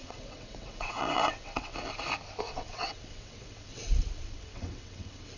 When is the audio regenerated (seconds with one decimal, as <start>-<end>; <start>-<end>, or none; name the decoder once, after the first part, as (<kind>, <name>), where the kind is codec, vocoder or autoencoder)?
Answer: 0.0-1.7 (vocoder, WaveNeXt); 2.4-5.4